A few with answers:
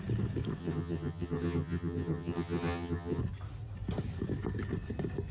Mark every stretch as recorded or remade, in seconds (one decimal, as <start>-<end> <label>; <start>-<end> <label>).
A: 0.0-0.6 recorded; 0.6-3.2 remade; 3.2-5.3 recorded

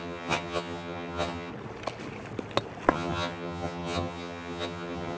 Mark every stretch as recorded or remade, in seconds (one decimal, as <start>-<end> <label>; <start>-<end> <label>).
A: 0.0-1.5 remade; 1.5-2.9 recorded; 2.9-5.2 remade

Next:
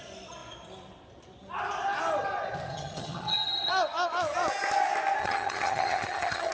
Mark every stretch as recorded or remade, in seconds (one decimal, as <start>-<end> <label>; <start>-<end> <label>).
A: 0.0-2.7 recorded; 2.7-3.7 remade; 3.7-5.2 recorded; 5.2-6.5 remade

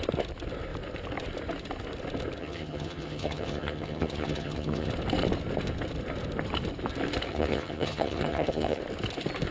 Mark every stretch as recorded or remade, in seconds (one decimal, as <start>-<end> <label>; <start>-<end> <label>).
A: 0.0-2.4 recorded; 2.4-4.9 remade; 4.9-7.3 recorded; 7.3-8.8 remade; 8.8-9.5 recorded